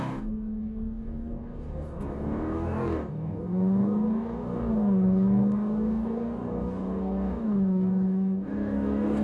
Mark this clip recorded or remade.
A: remade